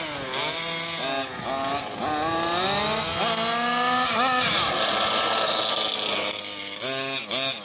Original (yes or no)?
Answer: yes